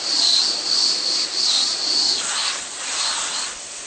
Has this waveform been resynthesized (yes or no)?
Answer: no